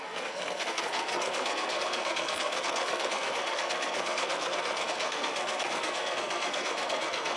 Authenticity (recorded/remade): remade